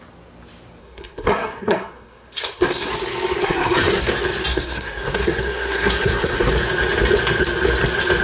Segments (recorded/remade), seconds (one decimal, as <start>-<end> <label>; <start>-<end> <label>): 0.0-0.8 recorded; 0.8-2.9 remade; 2.9-3.4 recorded; 3.4-4.1 remade; 4.1-4.5 recorded; 4.5-6.5 remade; 6.5-8.2 recorded